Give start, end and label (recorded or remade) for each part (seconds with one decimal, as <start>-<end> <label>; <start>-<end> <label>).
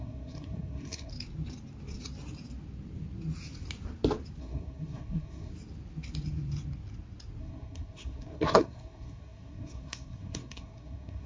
0.0-1.1 remade; 1.1-4.4 recorded; 4.4-5.5 remade; 5.5-7.4 recorded; 7.4-11.3 remade